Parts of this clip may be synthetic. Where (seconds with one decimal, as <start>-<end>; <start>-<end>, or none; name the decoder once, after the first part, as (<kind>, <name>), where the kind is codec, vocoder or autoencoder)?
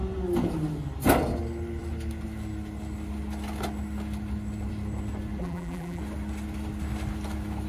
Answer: 5.4-6.0 (vocoder, BigVGAN v2)